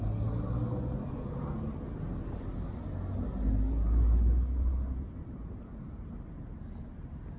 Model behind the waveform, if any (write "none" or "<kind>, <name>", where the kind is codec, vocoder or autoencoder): none